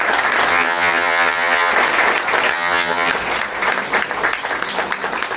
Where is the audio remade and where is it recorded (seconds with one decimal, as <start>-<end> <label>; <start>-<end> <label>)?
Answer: 0.0-0.5 recorded; 0.5-1.7 remade; 1.7-2.5 recorded; 2.5-3.1 remade; 3.1-5.4 recorded